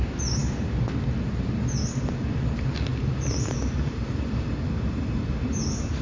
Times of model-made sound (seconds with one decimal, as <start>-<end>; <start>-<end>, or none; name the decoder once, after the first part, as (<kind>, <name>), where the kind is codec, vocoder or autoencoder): none